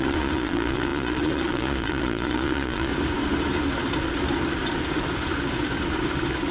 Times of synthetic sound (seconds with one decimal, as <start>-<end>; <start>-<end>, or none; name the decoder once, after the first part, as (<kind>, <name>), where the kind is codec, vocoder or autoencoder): 0.0-2.9 (vocoder, Vocos)